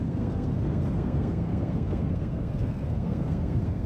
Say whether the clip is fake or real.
fake